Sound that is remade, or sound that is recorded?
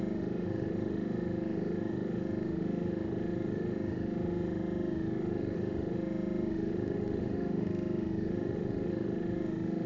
remade